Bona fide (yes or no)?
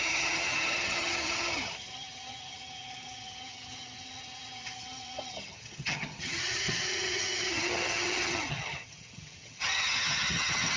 no